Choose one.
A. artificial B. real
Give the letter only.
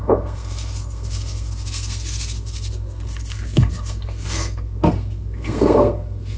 A